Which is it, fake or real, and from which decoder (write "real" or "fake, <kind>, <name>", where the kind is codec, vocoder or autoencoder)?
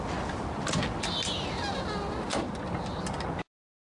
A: real